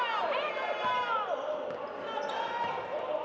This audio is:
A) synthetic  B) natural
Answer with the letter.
B